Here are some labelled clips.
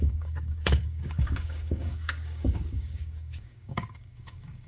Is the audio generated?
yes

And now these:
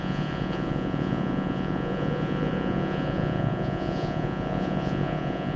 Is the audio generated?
yes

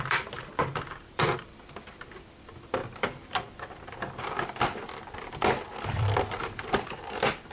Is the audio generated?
yes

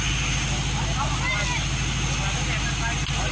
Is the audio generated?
no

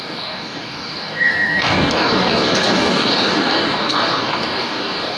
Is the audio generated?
yes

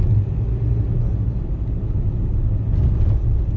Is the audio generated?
no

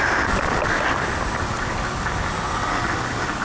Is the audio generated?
no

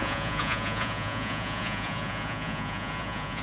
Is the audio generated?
yes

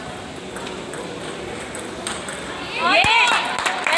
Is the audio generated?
no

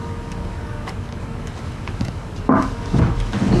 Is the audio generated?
yes